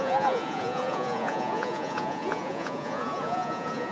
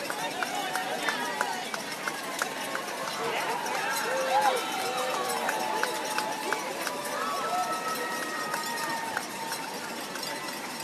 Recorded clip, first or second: second